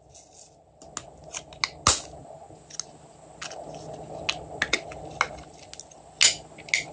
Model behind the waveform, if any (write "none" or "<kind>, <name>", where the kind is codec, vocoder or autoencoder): none